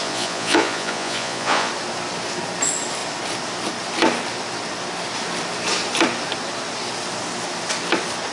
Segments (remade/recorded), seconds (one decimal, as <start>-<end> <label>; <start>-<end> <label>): 0.0-1.7 remade; 1.7-8.3 recorded